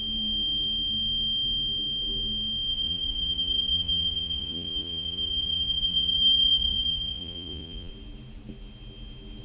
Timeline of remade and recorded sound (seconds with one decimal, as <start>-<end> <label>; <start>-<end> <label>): 0.0-2.7 recorded; 2.7-7.9 remade; 7.9-9.4 recorded